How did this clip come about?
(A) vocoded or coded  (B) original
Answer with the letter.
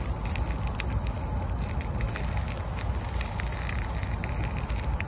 B